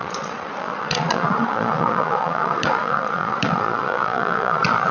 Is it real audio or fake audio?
fake